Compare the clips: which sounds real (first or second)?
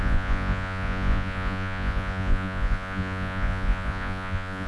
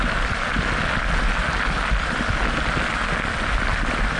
second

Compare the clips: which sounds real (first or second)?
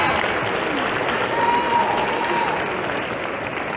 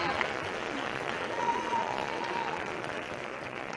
first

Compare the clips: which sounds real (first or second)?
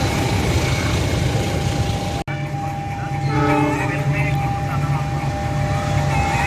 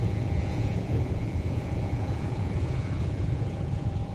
first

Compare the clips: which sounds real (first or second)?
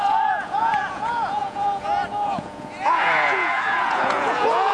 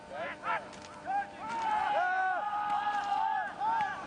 second